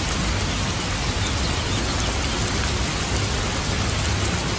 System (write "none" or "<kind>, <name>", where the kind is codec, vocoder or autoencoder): none